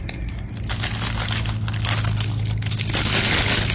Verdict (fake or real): real